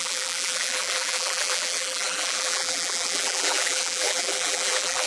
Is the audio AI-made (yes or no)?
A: yes